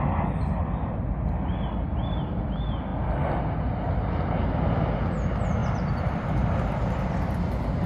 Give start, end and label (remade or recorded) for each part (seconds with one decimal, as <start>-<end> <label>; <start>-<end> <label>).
0.0-5.6 recorded; 5.6-7.5 remade; 7.5-7.9 recorded